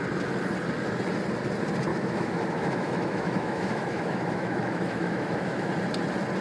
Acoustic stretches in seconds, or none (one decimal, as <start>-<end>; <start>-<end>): 0.0-1.9; 5.7-6.4